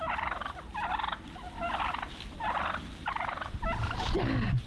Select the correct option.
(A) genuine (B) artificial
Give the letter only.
A